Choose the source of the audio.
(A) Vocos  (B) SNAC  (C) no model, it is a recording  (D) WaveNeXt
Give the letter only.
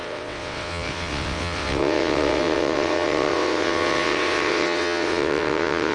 D